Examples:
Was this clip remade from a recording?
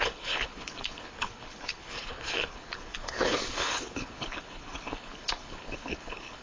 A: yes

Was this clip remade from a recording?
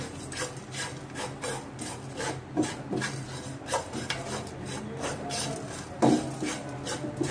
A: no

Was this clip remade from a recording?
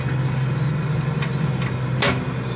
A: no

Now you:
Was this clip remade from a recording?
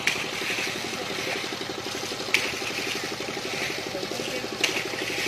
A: no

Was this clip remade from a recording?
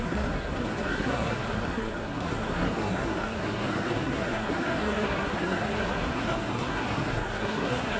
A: yes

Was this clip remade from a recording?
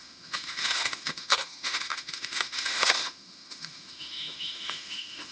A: yes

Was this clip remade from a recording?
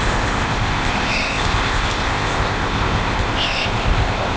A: yes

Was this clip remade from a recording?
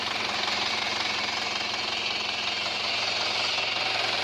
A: no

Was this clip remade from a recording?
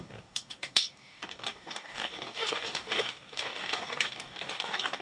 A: yes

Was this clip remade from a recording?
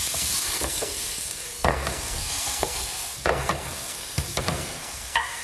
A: yes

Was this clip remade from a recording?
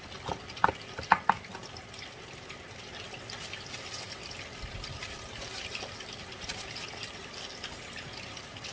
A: no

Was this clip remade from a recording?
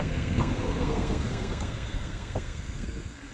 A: yes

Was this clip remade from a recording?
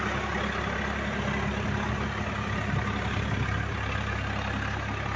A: no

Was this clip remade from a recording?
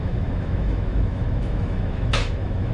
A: yes